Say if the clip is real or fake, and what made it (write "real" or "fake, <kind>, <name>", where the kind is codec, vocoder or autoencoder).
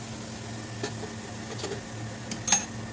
real